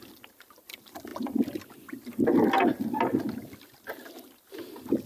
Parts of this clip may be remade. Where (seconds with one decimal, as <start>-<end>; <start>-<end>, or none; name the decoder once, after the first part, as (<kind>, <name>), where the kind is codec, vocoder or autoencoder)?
none